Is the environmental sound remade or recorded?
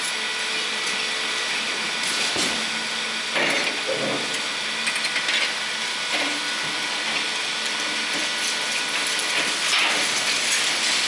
recorded